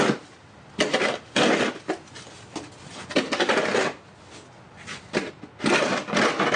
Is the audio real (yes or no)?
yes